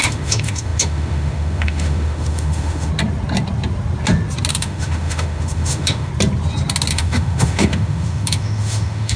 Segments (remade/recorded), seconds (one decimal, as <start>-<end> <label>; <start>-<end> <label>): 0.0-2.9 remade; 2.9-4.5 recorded; 4.5-6.1 remade; 6.1-6.9 recorded; 6.9-9.2 remade